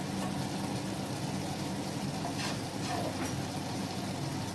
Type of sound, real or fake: real